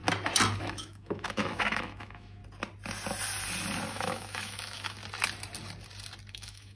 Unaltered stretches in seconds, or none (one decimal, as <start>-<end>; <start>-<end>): 0.0-0.6; 2.4-3.9; 5.0-6.3